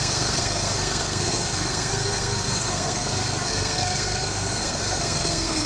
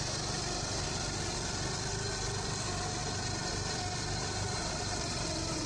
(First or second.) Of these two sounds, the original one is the second